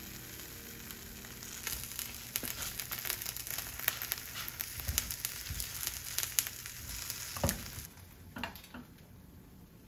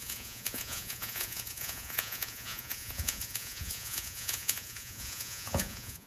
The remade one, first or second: second